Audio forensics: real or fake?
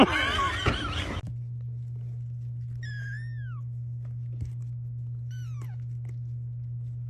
real